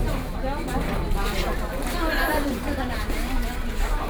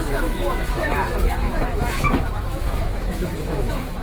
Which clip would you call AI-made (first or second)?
second